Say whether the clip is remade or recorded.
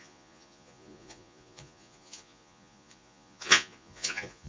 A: remade